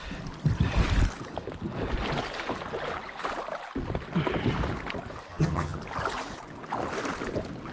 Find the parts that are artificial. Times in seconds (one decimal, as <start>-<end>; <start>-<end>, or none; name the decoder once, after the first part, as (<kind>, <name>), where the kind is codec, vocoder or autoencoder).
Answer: 5.3-5.8 (vocoder, HiFi-GAN)